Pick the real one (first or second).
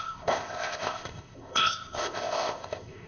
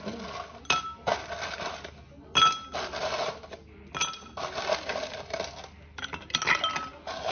second